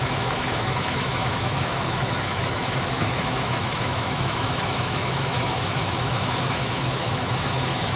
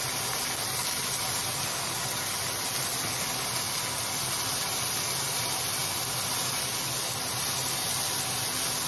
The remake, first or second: first